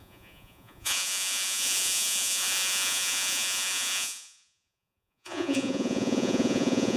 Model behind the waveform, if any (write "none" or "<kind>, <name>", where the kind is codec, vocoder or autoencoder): vocoder, Vocos